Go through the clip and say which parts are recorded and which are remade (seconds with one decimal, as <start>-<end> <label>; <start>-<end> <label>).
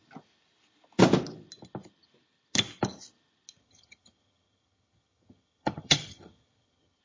0.0-3.6 recorded; 3.6-7.0 remade